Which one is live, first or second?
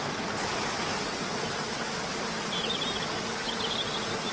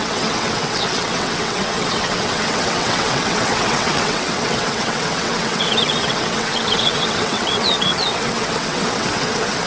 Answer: first